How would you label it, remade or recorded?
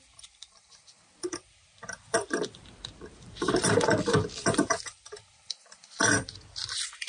remade